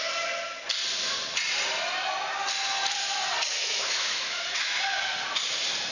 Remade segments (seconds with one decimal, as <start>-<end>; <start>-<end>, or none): 3.6-4.8